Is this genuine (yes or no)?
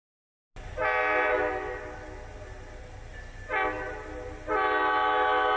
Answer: yes